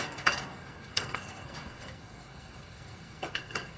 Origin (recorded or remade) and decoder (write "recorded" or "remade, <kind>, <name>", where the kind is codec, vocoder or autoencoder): remade, codec, SNAC